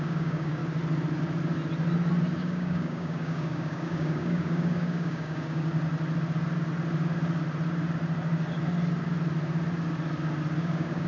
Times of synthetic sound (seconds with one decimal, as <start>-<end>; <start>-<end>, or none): 0.0-0.6; 2.4-5.7; 10.6-11.1